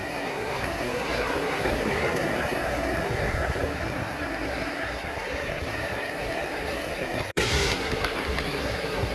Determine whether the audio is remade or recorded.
remade